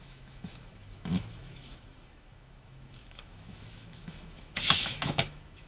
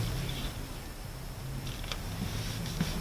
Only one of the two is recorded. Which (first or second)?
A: second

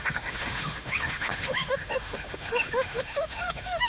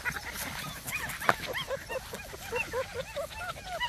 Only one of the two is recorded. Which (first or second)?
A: second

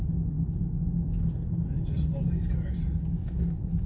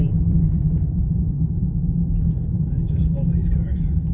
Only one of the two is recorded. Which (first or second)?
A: first